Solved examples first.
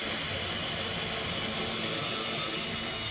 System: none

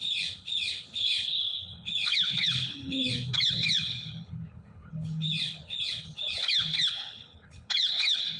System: codec, HILCodec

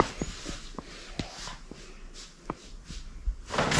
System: none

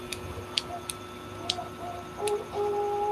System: none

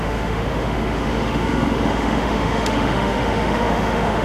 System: autoencoder, DAC-VAE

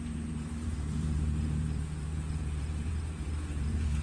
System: vocoder, Vocos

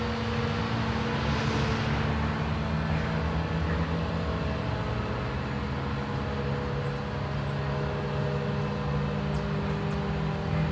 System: none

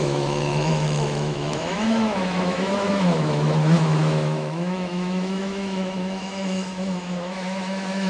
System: autoencoder, DAC-VAE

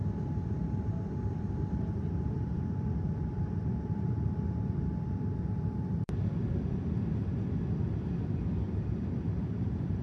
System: vocoder, BigVGAN v2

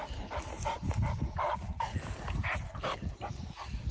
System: none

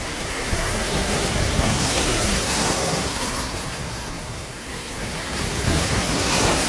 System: codec, SNAC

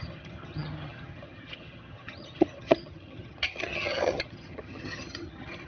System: vocoder, HiFi-GAN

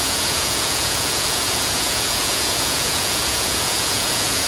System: vocoder, Vocos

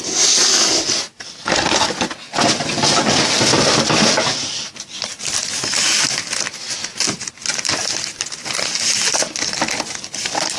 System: none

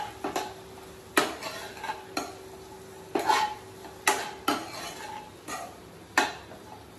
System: none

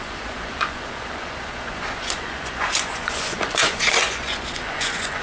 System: vocoder, Vocos